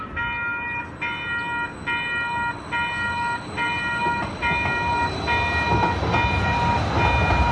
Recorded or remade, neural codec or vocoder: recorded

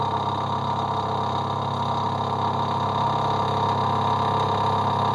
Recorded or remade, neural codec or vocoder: recorded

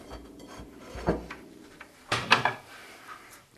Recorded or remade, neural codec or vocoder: remade, vocoder, BigVGAN v2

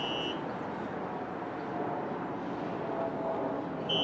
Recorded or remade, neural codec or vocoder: recorded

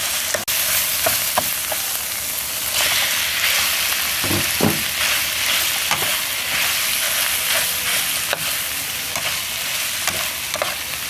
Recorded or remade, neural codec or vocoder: recorded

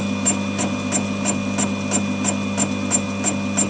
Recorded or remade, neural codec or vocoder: recorded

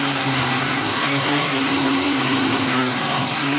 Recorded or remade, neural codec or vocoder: remade, codec, SNAC